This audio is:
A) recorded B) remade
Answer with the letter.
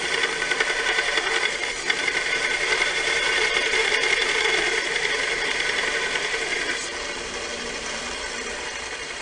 B